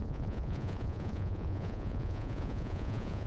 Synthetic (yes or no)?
yes